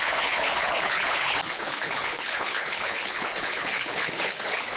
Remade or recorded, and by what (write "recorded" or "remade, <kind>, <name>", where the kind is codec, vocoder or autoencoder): remade, codec, HILCodec